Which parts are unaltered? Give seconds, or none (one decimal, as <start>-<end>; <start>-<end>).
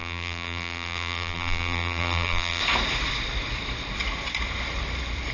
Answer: 2.6-5.3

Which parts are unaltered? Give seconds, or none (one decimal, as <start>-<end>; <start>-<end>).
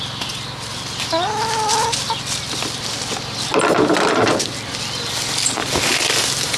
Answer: 0.0-5.6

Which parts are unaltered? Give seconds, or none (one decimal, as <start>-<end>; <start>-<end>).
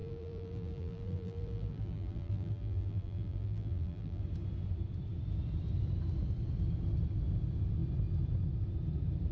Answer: 4.2-9.3